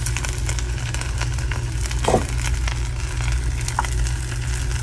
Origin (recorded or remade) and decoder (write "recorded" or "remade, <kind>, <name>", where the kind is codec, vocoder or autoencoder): recorded